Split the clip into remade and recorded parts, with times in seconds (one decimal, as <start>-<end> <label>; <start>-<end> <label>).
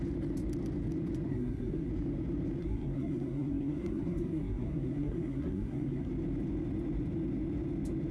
0.0-1.3 recorded; 1.3-1.9 remade; 1.9-2.6 recorded; 2.6-6.1 remade; 6.1-8.1 recorded